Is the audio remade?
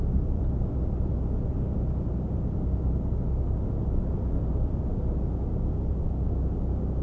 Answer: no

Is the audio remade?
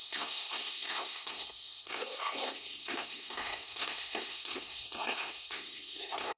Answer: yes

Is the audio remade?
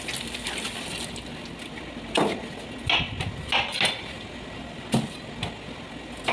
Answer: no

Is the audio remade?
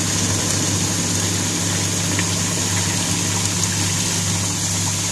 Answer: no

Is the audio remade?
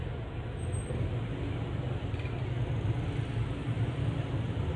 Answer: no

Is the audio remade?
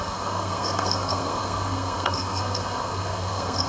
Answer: yes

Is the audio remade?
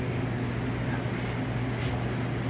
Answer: no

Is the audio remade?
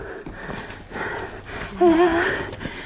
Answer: no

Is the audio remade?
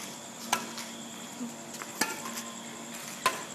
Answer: no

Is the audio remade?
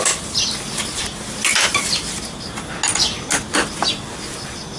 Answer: no